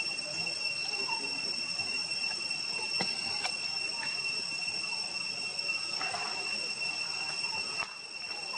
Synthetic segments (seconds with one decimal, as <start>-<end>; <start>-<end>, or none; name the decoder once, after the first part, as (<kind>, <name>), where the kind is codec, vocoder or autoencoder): none